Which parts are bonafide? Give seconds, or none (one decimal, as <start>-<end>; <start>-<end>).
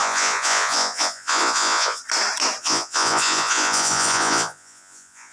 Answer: 2.0-2.6